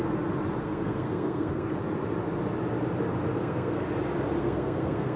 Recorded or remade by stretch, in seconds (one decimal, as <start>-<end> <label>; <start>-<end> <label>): 0.0-0.6 recorded; 0.6-1.7 remade; 1.7-3.4 recorded; 3.4-3.8 remade; 3.8-4.4 recorded; 4.4-5.2 remade